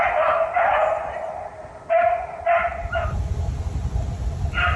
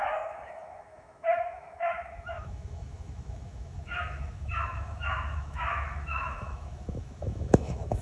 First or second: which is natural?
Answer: first